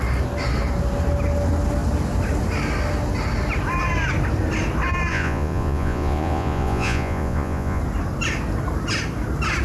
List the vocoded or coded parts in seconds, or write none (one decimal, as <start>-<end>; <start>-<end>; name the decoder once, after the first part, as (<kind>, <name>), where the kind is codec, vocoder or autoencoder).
5.1-7.8 (vocoder, Vocos)